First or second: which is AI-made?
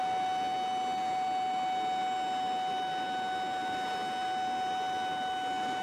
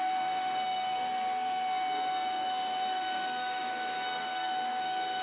second